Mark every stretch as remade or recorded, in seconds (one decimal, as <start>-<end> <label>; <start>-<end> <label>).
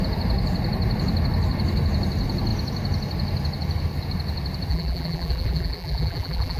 0.0-4.7 recorded; 4.7-6.6 remade